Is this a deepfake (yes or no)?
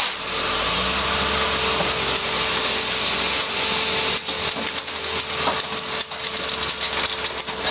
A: no